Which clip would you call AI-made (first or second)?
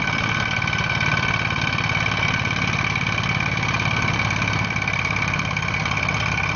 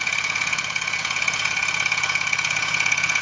second